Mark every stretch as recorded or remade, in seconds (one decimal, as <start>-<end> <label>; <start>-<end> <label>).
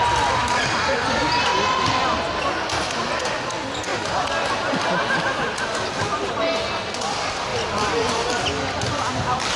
0.0-9.6 recorded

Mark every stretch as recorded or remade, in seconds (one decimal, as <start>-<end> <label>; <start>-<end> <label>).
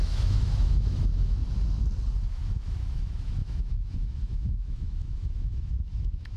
0.0-1.4 remade; 1.4-2.3 recorded; 2.3-6.4 remade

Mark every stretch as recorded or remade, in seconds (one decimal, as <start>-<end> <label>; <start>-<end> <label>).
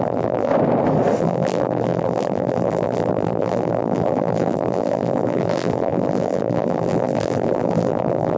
0.0-0.5 remade; 0.5-1.2 recorded; 1.2-8.4 remade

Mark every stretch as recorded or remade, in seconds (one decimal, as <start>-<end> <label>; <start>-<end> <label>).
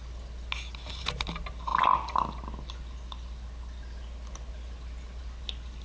0.0-5.8 recorded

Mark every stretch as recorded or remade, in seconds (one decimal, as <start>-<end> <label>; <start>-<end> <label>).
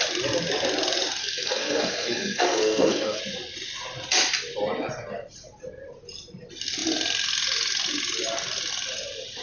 0.0-1.2 recorded; 1.2-3.2 remade; 3.2-9.4 recorded